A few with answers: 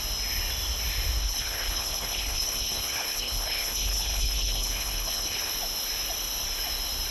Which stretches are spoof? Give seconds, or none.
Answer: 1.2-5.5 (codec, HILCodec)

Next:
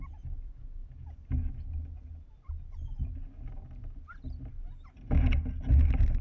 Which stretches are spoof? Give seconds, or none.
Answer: none

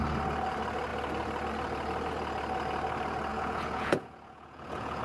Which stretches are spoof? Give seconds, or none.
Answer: 3.3-5.0 (vocoder, Vocos)

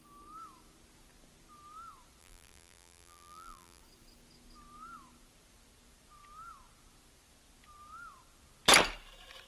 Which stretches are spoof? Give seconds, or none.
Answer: 2.2-3.8 (vocoder, BigVGAN v2)

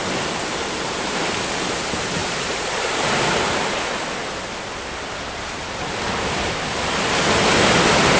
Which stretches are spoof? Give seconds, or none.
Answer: 0.4-1.3 (vocoder, BigVGAN v2); 2.2-3.8

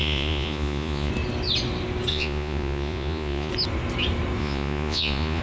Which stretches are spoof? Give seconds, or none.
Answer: 0.0-1.1 (vocoder, Vocos); 2.1-3.5; 4.4-5.4

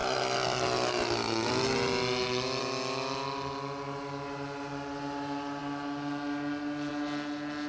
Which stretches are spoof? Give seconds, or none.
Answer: none